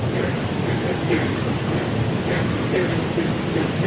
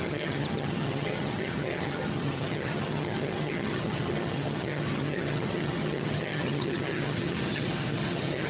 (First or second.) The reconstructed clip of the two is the second